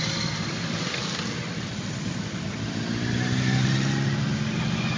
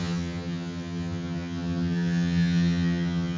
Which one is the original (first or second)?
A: first